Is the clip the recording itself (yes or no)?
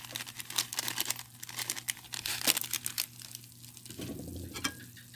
yes